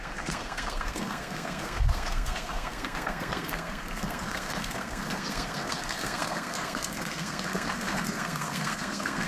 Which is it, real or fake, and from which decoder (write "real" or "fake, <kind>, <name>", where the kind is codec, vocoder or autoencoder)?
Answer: fake, codec, SNAC